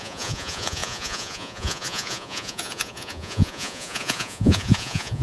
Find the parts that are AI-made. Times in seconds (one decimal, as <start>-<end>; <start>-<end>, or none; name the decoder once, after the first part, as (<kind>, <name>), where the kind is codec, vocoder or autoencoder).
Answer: 0.0-5.2 (vocoder, Vocos)